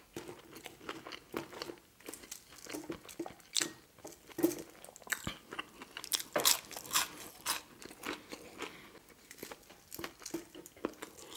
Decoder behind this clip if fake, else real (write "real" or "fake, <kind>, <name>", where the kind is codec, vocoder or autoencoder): real